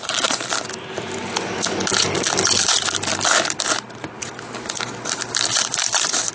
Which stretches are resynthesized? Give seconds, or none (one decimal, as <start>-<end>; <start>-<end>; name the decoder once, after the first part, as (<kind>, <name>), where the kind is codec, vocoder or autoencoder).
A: 3.1-4.1 (vocoder, BigVGAN v2); 5.5-6.3